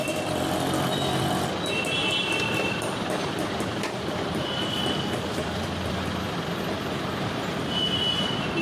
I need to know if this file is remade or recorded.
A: remade